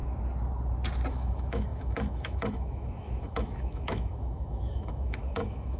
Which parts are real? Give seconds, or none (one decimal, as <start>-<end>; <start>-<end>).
0.0-1.1